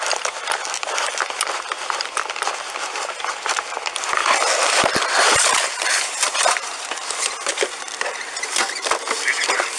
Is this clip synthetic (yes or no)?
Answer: yes